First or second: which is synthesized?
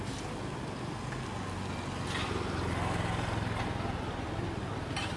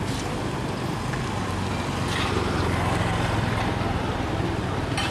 second